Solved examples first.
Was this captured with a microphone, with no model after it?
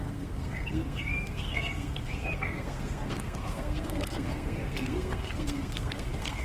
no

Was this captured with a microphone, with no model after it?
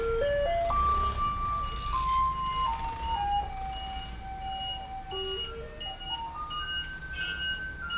yes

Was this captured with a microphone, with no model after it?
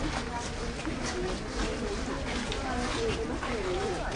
yes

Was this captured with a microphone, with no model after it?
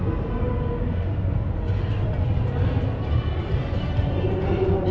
yes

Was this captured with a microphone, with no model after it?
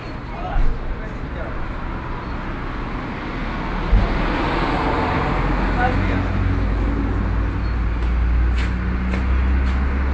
yes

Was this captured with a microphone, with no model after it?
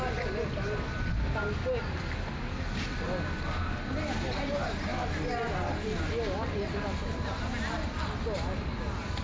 yes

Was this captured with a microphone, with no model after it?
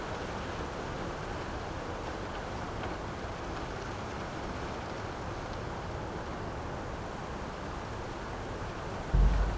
yes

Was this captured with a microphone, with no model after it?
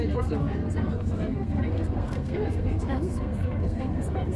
no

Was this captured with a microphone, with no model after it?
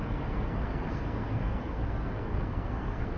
no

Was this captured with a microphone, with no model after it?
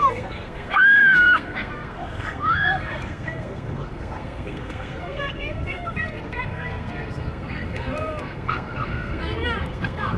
no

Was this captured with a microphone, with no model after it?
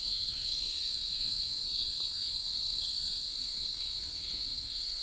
no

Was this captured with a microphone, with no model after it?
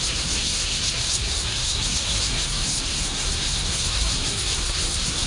no